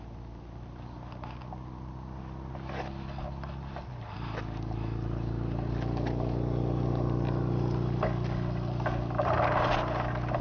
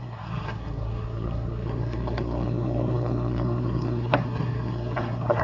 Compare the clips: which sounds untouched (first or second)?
first